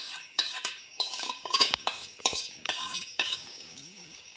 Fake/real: fake